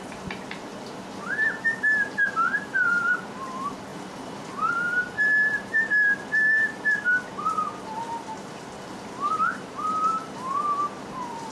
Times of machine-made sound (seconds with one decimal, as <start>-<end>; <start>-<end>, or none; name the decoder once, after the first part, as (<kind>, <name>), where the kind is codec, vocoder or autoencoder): none

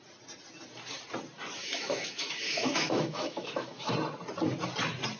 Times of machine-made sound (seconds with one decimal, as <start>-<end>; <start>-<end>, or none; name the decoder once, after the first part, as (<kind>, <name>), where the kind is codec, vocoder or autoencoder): 1.6-3.9 (autoencoder, DAC-VAE)

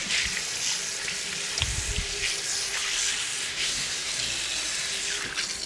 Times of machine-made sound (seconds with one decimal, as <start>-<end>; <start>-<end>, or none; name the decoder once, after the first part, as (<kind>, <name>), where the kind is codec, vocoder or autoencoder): 3.5-4.1 (codec, SNAC)

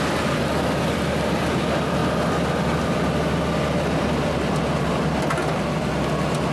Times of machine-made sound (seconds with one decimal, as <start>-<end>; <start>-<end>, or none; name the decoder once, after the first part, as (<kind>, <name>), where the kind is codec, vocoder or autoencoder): none